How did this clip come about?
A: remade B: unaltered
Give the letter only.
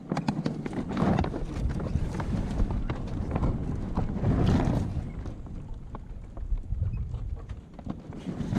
B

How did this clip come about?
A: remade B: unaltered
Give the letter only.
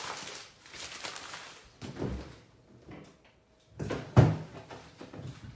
B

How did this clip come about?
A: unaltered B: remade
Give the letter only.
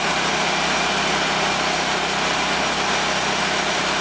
A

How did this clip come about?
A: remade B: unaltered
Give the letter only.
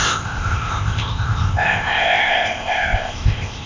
A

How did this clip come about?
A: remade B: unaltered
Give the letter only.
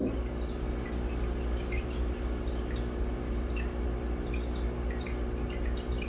B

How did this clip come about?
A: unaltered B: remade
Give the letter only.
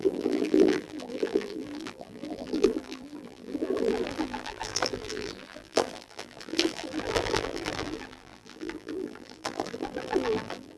B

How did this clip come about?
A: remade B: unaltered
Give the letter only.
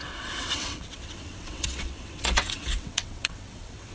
A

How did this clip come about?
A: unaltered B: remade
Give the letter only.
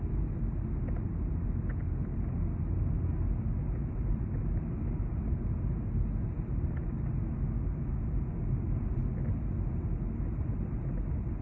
A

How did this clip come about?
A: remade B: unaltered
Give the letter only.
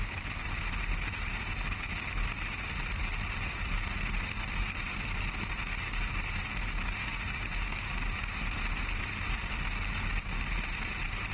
B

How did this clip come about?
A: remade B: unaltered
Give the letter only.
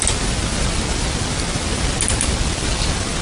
B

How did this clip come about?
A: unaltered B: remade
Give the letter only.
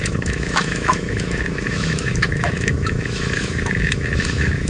B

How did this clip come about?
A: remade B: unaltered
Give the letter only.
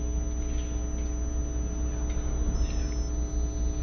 B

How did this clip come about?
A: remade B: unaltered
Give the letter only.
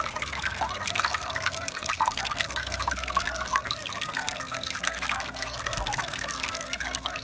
A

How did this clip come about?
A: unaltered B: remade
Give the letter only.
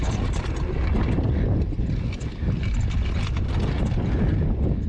A